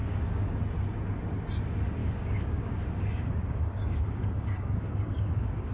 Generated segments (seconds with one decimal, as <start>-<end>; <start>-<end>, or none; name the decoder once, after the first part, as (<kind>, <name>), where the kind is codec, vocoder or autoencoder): 0.0-0.6 (codec, DAC); 2.0-5.7